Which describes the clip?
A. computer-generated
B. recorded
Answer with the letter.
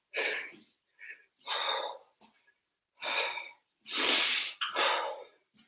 B